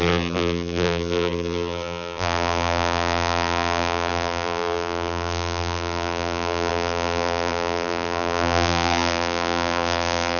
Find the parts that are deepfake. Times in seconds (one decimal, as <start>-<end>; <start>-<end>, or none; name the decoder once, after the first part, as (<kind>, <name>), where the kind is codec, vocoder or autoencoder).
0.0-10.4 (vocoder, BigVGAN v2)